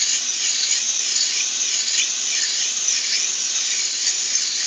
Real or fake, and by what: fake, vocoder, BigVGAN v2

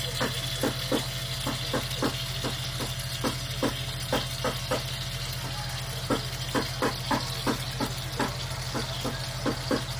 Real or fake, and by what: real